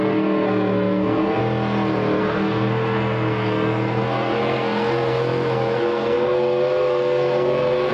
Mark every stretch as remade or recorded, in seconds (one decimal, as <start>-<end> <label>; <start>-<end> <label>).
0.0-1.4 remade; 1.4-2.2 recorded; 2.2-7.9 remade